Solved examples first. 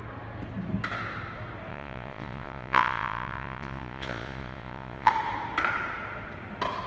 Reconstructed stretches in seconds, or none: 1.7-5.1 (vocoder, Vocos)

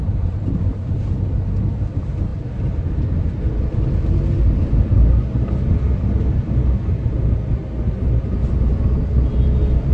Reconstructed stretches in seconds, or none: none

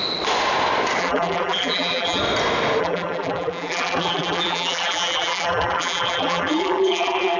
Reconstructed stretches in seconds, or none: 1.0-2.2 (vocoder, BigVGAN v2); 2.8-7.4

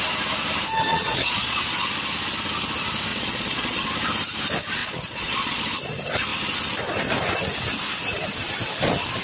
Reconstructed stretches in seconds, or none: 0.9-1.6 (vocoder, Vocos); 3.1-3.8; 4.8-5.6

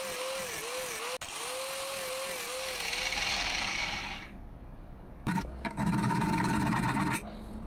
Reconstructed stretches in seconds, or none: 3.3-6.5 (codec, DAC)

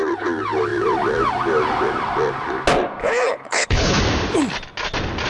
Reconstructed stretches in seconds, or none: 3.0-4.0 (codec, HILCodec)

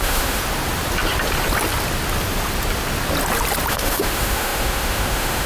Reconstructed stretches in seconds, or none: 0.0-0.4 (autoencoder, DAC-VAE); 3.7-5.5

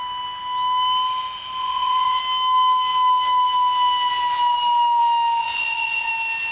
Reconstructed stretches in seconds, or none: 1.6-2.2 (vocoder, Vocos); 5.4-6.1